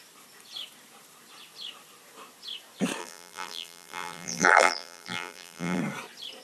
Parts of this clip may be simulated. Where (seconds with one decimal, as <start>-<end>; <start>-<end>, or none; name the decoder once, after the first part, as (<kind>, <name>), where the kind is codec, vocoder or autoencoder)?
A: 3.0-5.8 (vocoder, BigVGAN v2)